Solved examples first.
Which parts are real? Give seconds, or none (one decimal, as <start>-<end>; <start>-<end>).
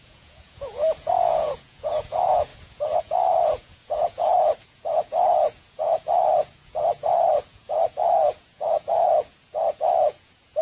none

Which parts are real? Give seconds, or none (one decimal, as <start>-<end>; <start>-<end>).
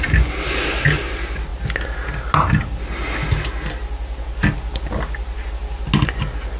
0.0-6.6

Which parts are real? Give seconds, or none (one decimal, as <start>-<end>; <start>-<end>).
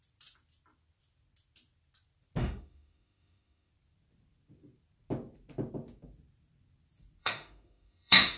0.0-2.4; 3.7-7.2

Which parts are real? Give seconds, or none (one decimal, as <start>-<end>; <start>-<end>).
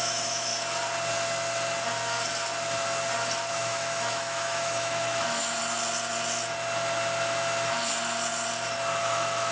0.5-3.5; 5.6-9.0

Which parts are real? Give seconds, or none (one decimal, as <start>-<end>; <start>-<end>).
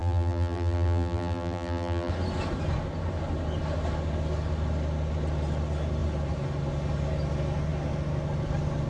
2.1-8.9